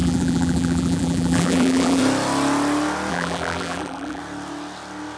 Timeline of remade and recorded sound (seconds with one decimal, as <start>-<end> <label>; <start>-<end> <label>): 0.0-2.0 remade; 2.0-3.1 recorded; 3.1-4.2 remade; 4.2-5.2 recorded